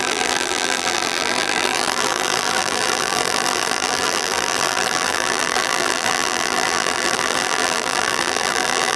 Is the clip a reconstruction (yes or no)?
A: yes